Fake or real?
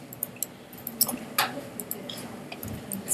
real